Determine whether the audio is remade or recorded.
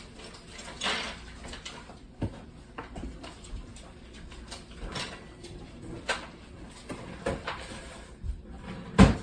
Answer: remade